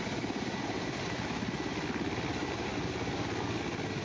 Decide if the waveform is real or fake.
real